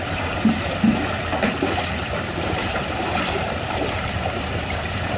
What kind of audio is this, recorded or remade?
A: remade